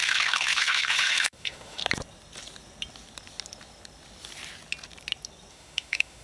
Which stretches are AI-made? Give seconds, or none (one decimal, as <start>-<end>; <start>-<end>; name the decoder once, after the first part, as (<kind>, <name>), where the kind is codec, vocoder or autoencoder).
0.0-1.8 (autoencoder, DAC-VAE); 5.5-6.2

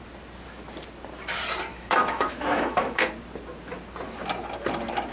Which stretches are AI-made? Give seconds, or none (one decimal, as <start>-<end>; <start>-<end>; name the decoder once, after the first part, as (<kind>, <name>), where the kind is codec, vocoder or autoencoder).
1.7-3.1 (autoencoder, DAC-VAE)